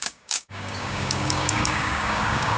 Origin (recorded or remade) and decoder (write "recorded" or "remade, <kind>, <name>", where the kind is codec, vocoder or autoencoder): remade, codec, DAC